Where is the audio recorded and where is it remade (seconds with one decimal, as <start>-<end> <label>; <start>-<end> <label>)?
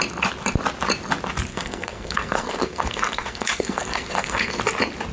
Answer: 0.0-1.5 recorded; 1.5-4.6 remade; 4.6-5.1 recorded